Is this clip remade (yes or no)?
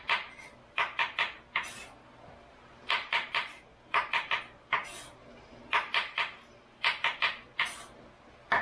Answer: no